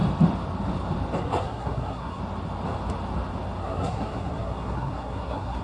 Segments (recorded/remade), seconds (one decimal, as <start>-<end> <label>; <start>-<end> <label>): 0.0-1.2 recorded; 1.2-2.2 remade; 2.2-3.6 recorded; 3.6-5.6 remade